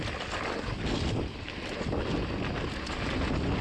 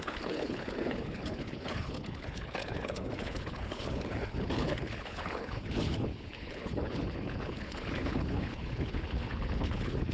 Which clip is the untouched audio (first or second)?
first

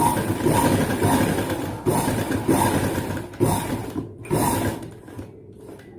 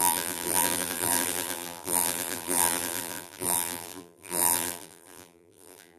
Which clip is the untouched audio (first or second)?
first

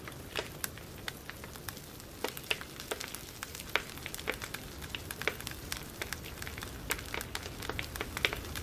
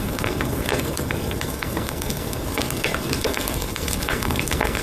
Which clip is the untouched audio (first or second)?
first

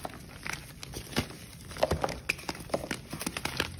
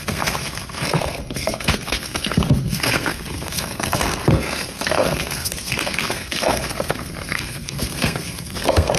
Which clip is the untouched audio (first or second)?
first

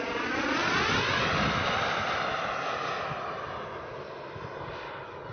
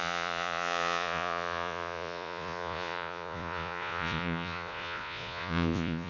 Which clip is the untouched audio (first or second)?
first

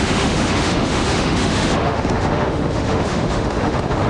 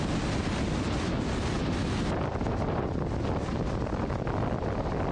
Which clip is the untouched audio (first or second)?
second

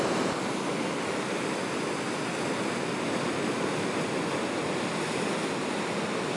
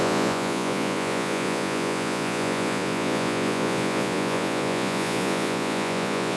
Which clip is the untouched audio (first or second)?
first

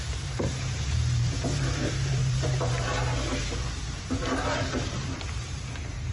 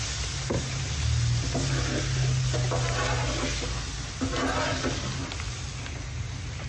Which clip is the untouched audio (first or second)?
second